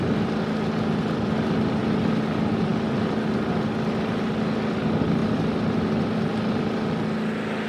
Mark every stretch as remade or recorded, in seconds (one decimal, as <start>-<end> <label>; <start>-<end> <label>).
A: 0.0-7.7 recorded

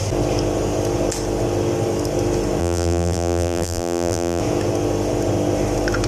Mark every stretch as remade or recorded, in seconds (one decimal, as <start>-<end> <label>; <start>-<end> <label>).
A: 0.0-2.6 recorded; 2.6-4.4 remade; 4.4-6.1 recorded

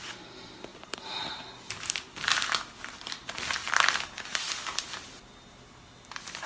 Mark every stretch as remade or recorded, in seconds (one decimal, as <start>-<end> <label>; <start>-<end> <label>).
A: 0.0-0.7 remade; 0.7-2.8 recorded; 2.8-3.6 remade; 3.6-6.5 recorded

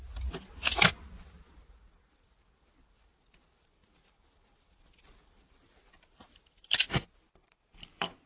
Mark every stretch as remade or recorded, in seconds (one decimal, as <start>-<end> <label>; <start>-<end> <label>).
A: 0.0-6.9 remade; 6.9-8.3 recorded

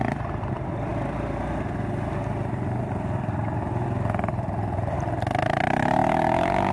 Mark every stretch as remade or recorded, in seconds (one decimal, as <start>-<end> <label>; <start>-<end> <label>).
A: 0.0-0.9 remade; 0.9-2.8 recorded; 2.8-6.0 remade; 6.0-6.7 recorded